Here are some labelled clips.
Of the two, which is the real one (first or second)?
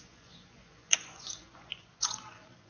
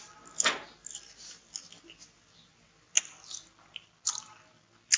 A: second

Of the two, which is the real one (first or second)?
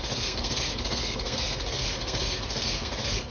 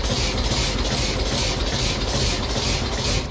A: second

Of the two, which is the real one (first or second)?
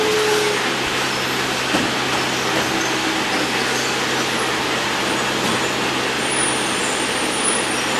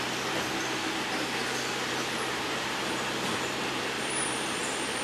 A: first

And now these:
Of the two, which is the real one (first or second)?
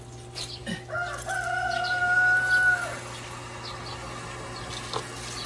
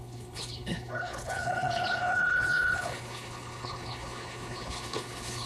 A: first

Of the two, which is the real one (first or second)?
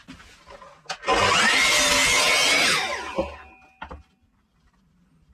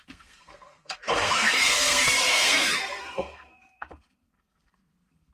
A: first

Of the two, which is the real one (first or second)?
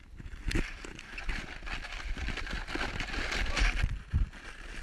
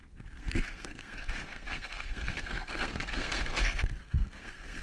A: first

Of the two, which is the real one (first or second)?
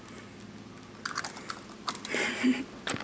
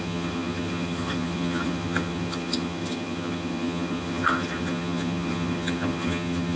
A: first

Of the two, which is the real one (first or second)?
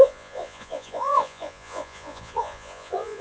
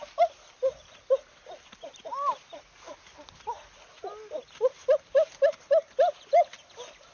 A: second